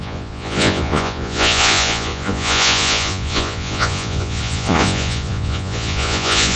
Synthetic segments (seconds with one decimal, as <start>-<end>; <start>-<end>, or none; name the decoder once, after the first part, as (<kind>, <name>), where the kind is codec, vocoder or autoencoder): 0.0-6.6 (vocoder, Vocos)